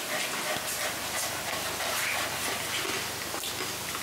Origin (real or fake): real